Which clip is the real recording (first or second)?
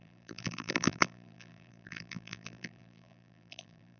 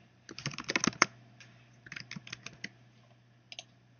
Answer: second